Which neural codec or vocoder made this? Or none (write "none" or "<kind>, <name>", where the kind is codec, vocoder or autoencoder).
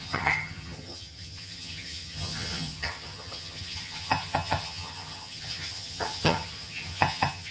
vocoder, HiFi-GAN